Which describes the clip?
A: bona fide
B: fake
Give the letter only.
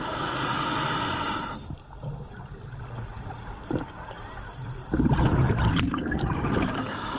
A